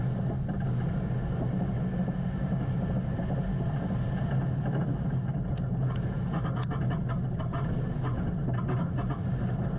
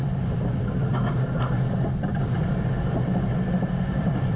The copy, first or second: second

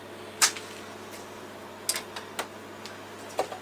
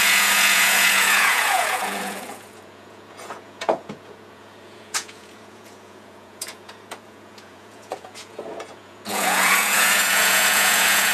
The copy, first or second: second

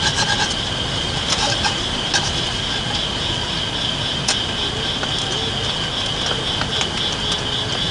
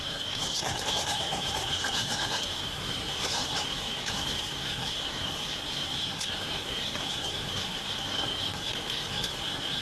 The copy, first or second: second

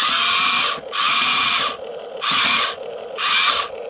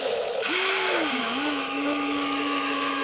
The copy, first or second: second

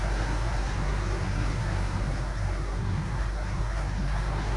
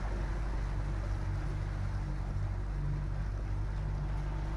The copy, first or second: first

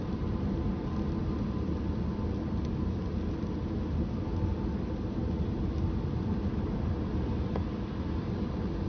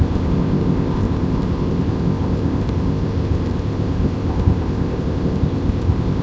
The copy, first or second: second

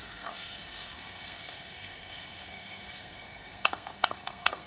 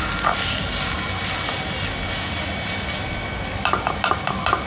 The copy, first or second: first